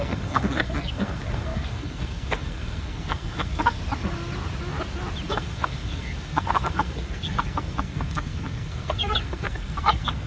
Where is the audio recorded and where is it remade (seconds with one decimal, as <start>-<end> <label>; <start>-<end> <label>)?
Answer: 0.0-3.8 remade; 3.8-5.3 recorded; 5.3-10.3 remade